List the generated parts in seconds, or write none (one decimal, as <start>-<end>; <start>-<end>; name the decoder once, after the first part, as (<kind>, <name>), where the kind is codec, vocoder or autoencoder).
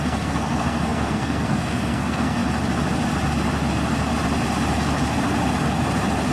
0.0-2.4 (codec, SNAC)